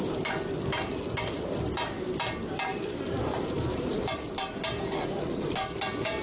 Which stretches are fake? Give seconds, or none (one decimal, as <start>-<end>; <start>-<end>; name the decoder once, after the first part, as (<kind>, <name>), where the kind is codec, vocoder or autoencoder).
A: 2.7-4.3 (vocoder, BigVGAN v2)